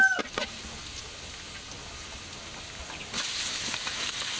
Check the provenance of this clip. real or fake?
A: real